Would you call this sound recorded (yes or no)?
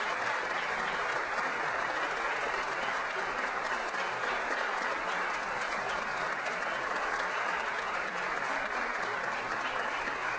no